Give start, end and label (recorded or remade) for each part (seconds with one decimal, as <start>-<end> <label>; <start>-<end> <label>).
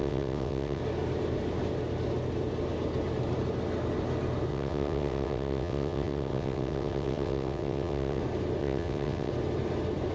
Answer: 0.0-0.8 remade; 0.8-4.5 recorded; 4.5-8.2 remade; 8.2-8.6 recorded; 8.6-9.3 remade; 9.3-10.1 recorded